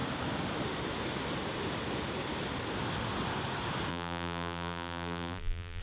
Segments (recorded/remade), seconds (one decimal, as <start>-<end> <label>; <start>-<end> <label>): 0.0-3.9 recorded; 3.9-5.8 remade